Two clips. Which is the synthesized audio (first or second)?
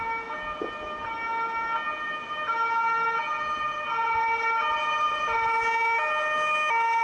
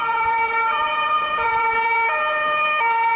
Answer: second